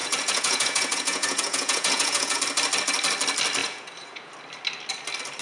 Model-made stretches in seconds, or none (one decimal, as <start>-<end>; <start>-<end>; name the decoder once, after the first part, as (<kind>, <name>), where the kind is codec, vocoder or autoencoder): 0.0-2.4 (vocoder, Vocos); 3.6-4.3